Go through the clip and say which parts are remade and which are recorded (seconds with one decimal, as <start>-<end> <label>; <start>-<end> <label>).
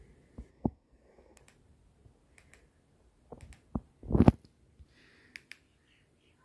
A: 0.0-0.5 recorded; 0.5-1.4 remade; 1.4-6.4 recorded